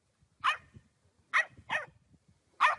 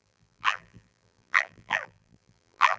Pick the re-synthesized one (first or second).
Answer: second